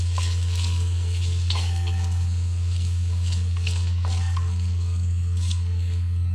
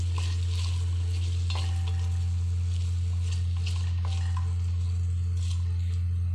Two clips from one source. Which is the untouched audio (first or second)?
second